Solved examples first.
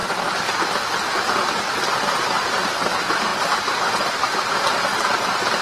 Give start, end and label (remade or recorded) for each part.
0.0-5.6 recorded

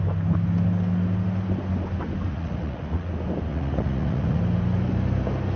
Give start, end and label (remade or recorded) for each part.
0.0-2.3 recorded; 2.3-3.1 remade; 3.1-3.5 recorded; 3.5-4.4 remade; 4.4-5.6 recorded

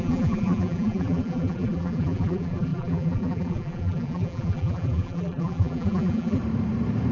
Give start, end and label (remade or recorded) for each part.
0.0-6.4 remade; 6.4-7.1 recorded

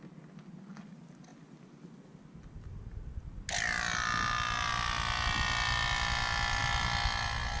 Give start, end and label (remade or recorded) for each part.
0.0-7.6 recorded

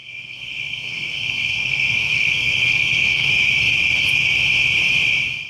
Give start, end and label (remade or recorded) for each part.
0.0-3.3 remade; 3.3-5.5 recorded